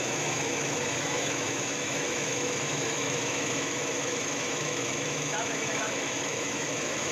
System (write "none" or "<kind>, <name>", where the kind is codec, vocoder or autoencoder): autoencoder, DAC-VAE